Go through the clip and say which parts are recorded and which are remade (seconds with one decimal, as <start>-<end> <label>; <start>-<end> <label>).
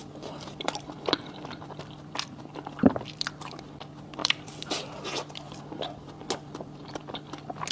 0.0-3.3 remade; 3.3-4.2 recorded; 4.2-4.8 remade; 4.8-7.7 recorded